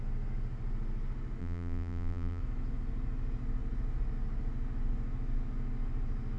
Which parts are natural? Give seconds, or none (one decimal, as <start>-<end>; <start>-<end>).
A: 0.0-1.4; 2.4-6.4

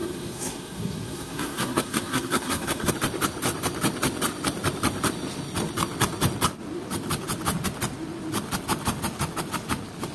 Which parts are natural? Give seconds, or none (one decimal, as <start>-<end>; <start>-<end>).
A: 2.9-10.1